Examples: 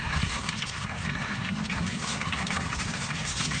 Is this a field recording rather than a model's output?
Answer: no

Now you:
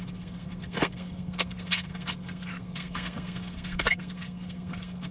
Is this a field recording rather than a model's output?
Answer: no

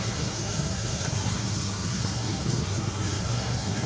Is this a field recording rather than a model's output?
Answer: no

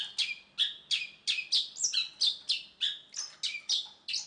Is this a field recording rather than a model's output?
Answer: yes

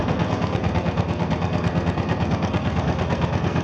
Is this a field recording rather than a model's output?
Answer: no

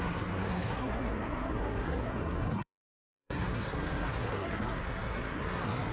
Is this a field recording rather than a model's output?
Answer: no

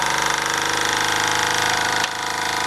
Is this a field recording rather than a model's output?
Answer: yes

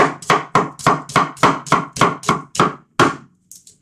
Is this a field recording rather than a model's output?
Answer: yes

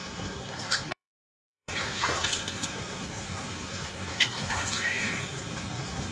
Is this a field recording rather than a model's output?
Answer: no